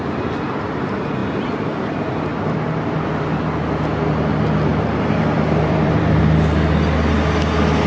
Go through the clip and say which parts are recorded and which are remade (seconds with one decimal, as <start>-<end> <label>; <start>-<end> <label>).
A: 0.0-4.7 recorded; 4.7-6.2 remade; 6.2-7.9 recorded